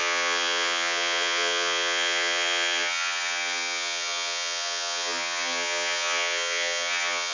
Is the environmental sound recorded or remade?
remade